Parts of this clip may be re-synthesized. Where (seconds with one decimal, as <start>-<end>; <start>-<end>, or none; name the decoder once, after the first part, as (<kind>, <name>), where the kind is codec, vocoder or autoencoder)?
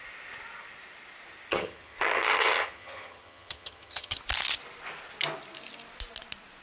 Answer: 1.5-4.2 (vocoder, HiFi-GAN)